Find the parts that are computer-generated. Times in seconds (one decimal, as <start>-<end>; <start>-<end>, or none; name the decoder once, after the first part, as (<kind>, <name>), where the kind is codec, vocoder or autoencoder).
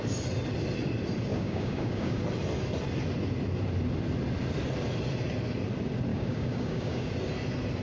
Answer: 1.3-2.2 (codec, DAC); 6.1-7.1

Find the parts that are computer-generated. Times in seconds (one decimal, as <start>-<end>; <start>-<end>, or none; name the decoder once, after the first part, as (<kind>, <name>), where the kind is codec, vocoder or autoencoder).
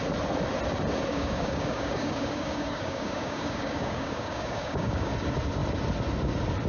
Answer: 1.1-5.1 (codec, DAC)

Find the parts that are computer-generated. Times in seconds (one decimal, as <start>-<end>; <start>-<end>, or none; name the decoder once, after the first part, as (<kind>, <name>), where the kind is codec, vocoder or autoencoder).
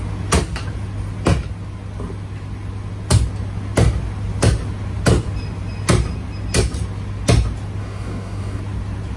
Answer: 7.8-8.6 (codec, DAC)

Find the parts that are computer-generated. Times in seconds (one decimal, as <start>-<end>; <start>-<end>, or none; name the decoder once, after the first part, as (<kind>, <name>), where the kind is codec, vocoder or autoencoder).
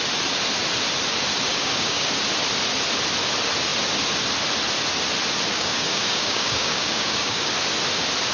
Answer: 1.5-2.1 (codec, DAC); 5.5-7.5